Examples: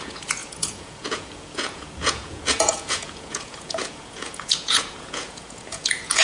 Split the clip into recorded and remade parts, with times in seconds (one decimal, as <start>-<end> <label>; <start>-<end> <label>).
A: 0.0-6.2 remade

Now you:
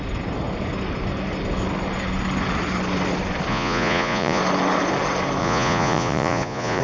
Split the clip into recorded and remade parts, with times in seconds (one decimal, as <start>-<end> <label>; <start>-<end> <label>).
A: 0.0-3.5 recorded; 3.5-4.4 remade; 4.4-5.4 recorded; 5.4-6.8 remade

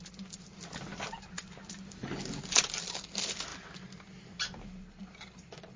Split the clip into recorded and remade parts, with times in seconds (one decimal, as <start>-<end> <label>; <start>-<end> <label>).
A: 0.0-5.8 recorded

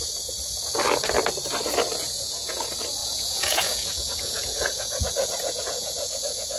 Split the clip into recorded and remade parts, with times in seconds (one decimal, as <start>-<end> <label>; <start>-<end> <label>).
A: 0.0-2.0 recorded; 2.0-2.6 remade; 2.6-3.0 recorded; 3.0-6.6 remade

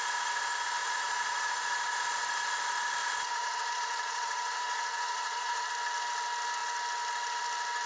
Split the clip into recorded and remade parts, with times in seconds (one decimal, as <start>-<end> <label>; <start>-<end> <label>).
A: 0.0-0.8 recorded; 0.8-1.7 remade; 1.7-3.0 recorded; 3.0-5.7 remade; 5.7-7.9 recorded

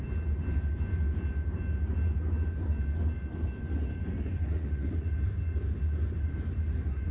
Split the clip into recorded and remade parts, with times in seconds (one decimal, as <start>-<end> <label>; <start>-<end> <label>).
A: 0.0-4.4 recorded; 4.4-5.1 remade; 5.1-7.1 recorded

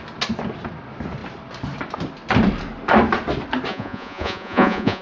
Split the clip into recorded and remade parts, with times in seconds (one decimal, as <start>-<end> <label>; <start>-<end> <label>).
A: 0.0-3.7 recorded; 3.7-5.0 remade